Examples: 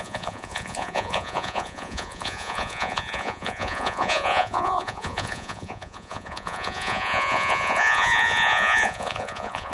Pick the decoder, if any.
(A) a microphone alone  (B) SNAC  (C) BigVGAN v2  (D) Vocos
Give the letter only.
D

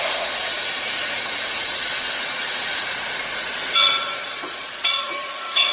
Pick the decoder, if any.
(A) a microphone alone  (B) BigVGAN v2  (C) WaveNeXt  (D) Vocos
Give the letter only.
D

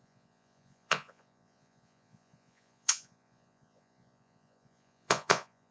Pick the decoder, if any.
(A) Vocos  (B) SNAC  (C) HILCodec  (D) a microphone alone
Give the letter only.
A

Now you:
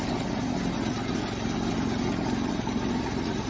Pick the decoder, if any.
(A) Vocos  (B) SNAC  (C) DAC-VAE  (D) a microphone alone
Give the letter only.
D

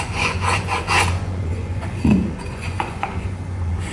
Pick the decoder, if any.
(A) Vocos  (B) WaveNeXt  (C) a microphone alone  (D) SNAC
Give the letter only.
A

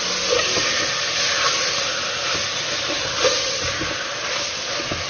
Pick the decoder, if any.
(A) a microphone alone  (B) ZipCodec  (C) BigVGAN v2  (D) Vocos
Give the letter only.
A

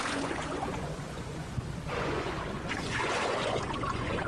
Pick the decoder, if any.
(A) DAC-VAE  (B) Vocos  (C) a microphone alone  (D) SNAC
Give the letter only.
B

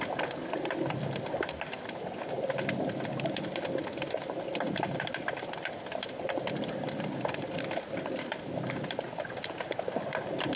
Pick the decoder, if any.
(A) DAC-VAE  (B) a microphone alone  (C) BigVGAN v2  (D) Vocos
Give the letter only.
B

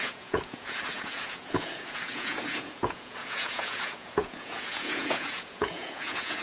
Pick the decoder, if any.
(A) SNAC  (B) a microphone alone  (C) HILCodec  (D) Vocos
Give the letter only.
D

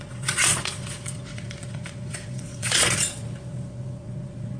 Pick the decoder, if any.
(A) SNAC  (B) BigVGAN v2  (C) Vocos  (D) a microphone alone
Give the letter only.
C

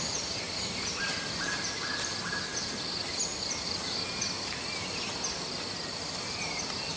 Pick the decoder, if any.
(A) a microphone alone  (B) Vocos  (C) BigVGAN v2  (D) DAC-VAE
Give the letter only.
A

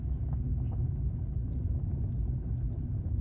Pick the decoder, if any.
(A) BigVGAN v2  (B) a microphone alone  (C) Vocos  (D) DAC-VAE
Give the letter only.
B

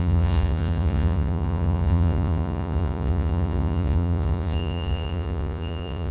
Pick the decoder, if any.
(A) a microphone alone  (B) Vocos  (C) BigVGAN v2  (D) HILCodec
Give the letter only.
B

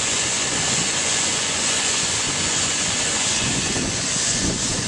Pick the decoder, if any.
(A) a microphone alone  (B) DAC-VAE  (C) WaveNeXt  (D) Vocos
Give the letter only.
D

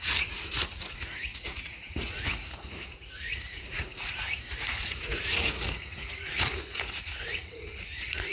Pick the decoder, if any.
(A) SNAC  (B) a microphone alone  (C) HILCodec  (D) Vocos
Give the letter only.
D